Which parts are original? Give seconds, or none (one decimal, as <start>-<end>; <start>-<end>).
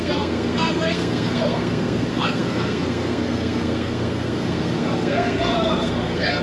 none